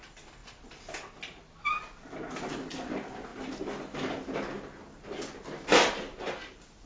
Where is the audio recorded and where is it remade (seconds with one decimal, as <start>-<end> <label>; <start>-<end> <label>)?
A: 0.0-6.9 recorded

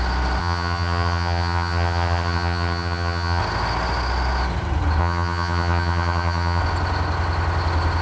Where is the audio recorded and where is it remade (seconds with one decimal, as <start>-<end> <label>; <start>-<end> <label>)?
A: 0.0-0.4 recorded; 0.4-3.4 remade; 3.4-5.0 recorded; 5.0-6.6 remade; 6.6-8.0 recorded